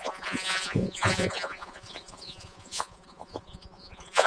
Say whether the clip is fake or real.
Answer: fake